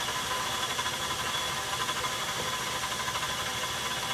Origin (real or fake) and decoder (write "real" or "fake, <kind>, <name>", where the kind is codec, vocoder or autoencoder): real